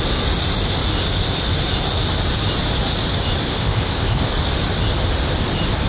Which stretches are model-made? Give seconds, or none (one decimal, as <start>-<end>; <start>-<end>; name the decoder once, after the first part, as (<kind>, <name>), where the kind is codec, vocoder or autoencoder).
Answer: 3.5-4.3 (codec, ZipCodec)

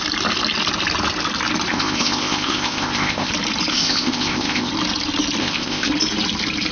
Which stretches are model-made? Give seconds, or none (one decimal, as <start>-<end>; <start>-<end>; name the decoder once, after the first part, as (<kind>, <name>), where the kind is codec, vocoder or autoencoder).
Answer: 1.7-3.3 (codec, ZipCodec); 3.7-4.7; 5.4-5.9

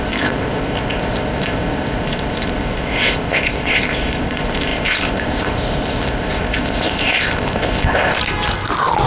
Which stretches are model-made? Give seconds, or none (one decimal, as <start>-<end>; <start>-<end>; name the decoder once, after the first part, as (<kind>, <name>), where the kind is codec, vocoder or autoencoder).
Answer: 0.0-8.2 (codec, ZipCodec)

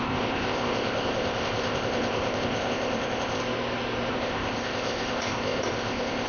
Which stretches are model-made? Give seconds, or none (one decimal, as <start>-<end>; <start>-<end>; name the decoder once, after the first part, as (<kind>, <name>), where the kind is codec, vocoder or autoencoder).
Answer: 0.0-3.4 (codec, ZipCodec); 4.1-6.3

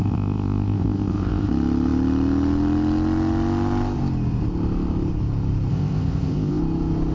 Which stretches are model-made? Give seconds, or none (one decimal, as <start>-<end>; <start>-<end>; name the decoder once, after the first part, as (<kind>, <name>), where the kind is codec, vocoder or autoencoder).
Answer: 0.0-1.5 (codec, ZipCodec); 5.7-6.6

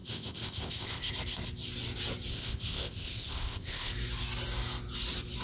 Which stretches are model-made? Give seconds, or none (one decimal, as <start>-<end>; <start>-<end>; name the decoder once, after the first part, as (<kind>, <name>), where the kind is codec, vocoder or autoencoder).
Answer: 0.0-1.1 (codec, ZipCodec); 2.3-3.9